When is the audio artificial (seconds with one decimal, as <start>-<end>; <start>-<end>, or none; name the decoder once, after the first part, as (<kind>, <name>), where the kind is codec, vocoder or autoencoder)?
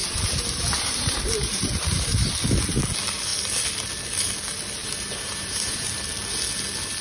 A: 0.0-2.3 (vocoder, BigVGAN v2); 4.8-6.0